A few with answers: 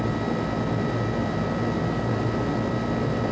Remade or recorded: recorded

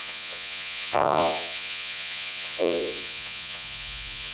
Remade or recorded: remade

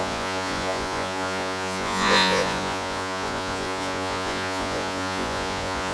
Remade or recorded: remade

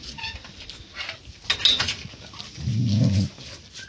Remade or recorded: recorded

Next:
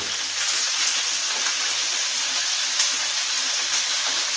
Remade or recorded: recorded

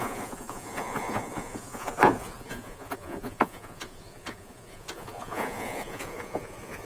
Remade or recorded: remade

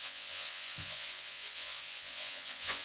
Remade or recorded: remade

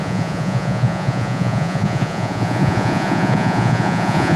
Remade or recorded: remade